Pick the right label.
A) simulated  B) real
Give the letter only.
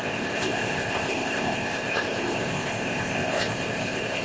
A